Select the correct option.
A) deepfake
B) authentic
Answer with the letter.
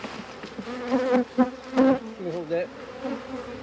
B